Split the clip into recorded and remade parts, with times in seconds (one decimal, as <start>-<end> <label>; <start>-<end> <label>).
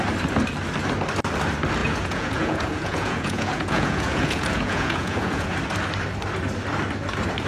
0.0-1.8 recorded; 1.8-5.5 remade; 5.5-7.5 recorded